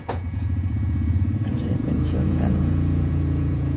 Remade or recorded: remade